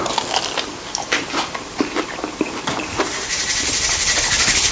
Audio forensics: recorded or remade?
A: recorded